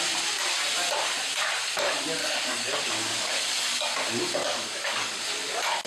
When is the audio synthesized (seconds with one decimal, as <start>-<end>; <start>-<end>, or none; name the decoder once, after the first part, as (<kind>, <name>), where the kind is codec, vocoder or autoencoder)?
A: 2.2-2.7 (codec, DAC); 3.1-3.8; 4.4-5.2